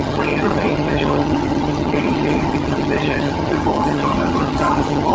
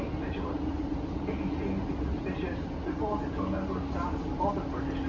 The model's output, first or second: first